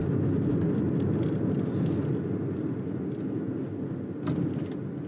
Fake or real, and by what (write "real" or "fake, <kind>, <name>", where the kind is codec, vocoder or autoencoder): real